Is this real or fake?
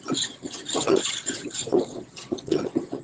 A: fake